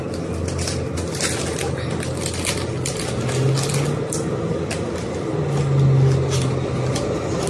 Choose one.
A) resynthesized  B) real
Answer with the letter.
B